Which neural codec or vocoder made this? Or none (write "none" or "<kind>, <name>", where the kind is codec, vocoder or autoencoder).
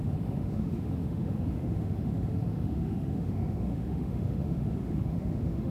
autoencoder, DAC-VAE